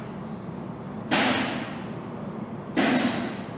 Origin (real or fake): real